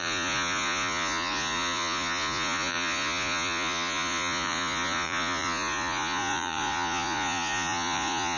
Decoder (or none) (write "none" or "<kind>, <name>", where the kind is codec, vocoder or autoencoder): vocoder, Vocos